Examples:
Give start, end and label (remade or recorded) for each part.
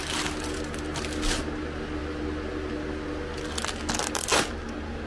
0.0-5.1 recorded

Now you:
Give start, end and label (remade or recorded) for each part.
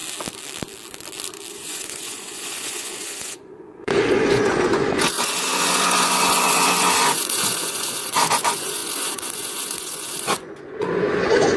0.0-1.5 recorded; 1.5-11.6 remade